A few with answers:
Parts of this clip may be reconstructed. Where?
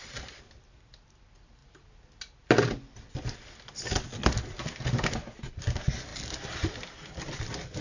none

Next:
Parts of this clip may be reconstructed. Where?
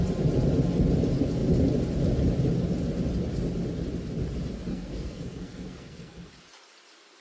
4.7-6.3 (codec, SNAC)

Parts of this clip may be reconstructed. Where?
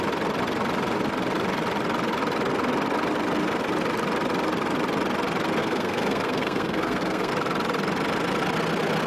5.6-7.3 (codec, SNAC)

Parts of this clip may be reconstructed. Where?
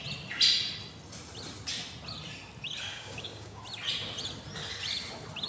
2.9-3.6 (codec, DAC)